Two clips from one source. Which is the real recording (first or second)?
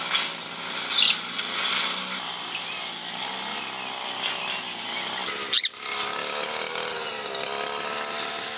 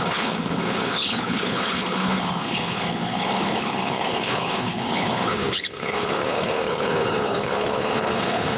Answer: first